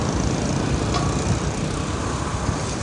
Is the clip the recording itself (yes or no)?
yes